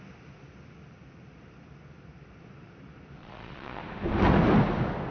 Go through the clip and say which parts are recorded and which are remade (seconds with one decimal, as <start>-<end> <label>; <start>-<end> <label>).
0.0-3.2 recorded; 3.2-3.8 remade; 3.8-5.1 recorded